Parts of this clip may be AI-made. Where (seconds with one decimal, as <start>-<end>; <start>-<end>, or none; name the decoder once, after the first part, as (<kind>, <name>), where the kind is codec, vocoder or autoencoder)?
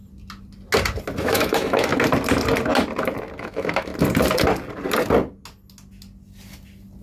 1.2-1.9 (autoencoder, DAC-VAE); 3.4-3.9